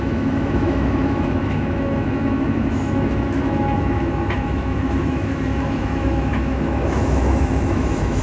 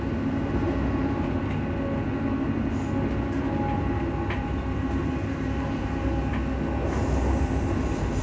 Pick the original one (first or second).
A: second